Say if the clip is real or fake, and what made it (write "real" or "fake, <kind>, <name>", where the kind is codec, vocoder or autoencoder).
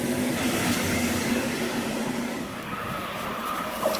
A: fake, codec, DAC